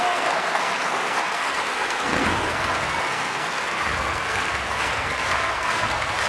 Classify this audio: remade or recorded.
remade